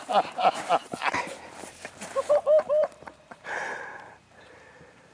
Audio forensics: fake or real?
fake